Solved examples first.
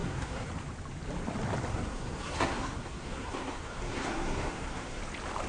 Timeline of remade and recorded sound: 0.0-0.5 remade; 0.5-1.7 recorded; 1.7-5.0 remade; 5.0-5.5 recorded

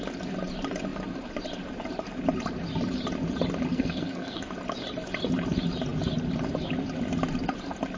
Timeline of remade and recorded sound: 0.0-3.7 recorded; 3.7-4.5 remade; 4.5-8.0 recorded

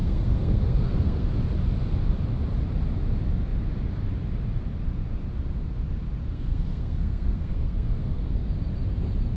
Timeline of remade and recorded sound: 0.0-1.3 remade; 1.3-6.3 recorded; 6.3-8.3 remade; 8.3-9.4 recorded

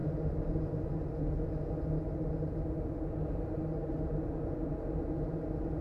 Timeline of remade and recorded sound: 0.0-5.8 recorded